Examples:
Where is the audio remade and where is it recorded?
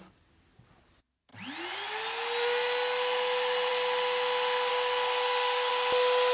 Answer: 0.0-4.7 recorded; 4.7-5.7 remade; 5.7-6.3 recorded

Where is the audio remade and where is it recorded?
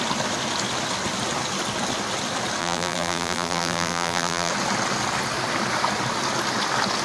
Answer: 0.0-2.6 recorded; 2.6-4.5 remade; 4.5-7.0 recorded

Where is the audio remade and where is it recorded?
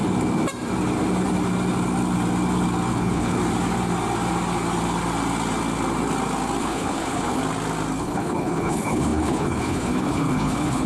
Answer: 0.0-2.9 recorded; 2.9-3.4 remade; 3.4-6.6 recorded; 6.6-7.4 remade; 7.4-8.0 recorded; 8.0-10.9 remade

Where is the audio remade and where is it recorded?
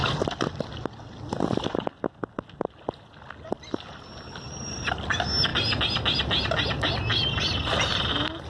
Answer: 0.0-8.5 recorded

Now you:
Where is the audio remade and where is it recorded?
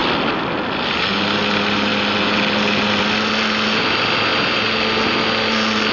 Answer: 0.0-5.9 recorded